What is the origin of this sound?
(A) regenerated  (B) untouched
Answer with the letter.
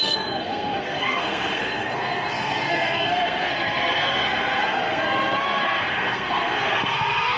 A